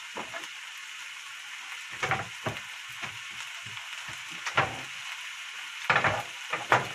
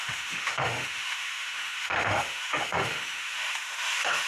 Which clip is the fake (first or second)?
second